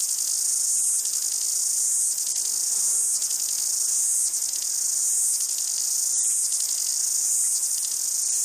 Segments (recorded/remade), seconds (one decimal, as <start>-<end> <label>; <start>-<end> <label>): 0.0-8.4 recorded